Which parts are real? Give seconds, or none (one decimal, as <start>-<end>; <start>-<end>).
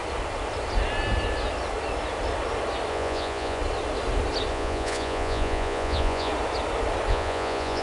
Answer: 0.0-2.9; 3.6-4.5; 6.3-7.1